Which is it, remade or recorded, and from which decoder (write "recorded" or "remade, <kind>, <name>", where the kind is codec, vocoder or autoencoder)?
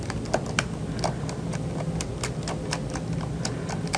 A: recorded